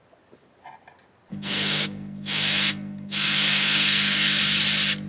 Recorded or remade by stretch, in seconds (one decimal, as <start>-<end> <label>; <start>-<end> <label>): 0.0-1.3 recorded; 1.3-4.4 remade; 4.4-5.1 recorded